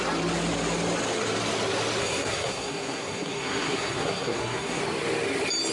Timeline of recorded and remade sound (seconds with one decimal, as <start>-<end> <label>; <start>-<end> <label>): 0.0-2.0 recorded; 2.0-4.8 remade; 4.8-5.7 recorded

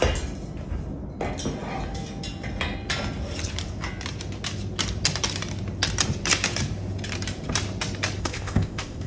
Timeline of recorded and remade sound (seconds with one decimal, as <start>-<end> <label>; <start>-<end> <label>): 0.0-8.2 recorded; 8.2-9.1 remade

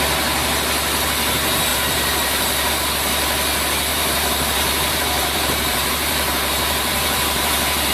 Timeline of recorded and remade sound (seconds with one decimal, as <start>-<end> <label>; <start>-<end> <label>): 0.0-1.7 recorded; 1.7-2.7 remade; 2.7-3.9 recorded; 3.9-7.5 remade; 7.5-7.9 recorded

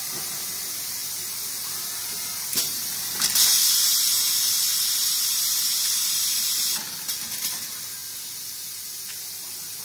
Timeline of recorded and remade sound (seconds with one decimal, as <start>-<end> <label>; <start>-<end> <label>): 0.0-9.8 remade

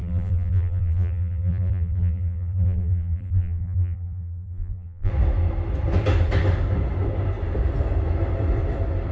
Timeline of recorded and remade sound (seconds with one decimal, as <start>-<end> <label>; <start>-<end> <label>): 0.0-5.1 remade; 5.1-9.1 recorded

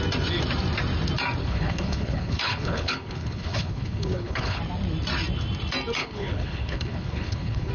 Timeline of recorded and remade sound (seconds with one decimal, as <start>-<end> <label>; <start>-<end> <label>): 0.0-1.4 recorded; 1.4-4.6 remade; 4.6-6.0 recorded; 6.0-7.7 remade

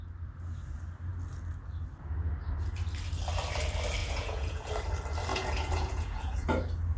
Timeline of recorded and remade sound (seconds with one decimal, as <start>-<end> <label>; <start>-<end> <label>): 0.0-4.0 recorded; 4.0-4.7 remade; 4.7-5.3 recorded; 5.3-6.5 remade; 6.5-7.0 recorded